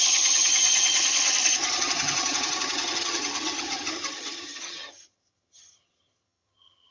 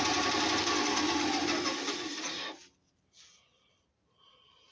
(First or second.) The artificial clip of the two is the first